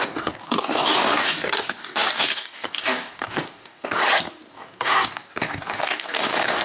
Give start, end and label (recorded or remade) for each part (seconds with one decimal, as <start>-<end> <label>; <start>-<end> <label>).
0.0-4.0 remade; 4.0-4.5 recorded; 4.5-6.6 remade